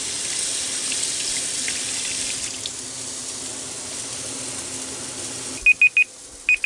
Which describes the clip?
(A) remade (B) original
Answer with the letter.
B